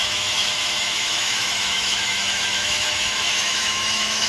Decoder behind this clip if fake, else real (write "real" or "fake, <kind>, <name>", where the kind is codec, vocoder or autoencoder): fake, autoencoder, DAC-VAE